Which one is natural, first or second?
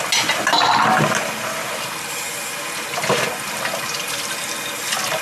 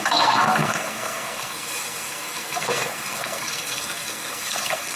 first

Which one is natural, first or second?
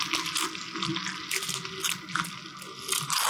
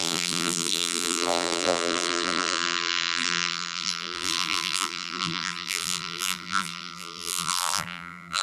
first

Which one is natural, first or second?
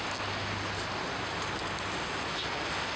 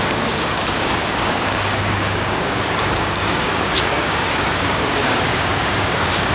first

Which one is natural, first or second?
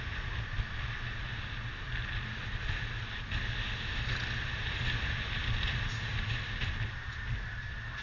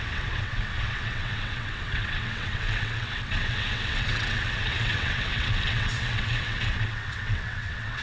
first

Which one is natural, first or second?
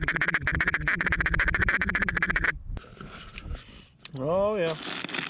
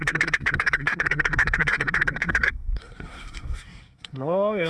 first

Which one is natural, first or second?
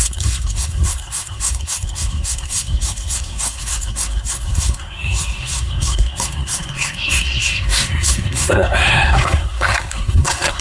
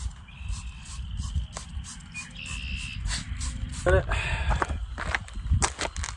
second